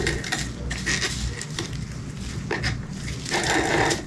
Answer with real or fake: real